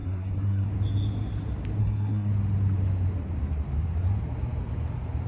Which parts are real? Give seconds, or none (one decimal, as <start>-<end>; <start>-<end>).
0.7-1.8; 2.3-5.3